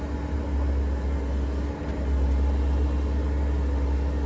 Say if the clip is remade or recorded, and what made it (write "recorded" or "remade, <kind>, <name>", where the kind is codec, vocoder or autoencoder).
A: recorded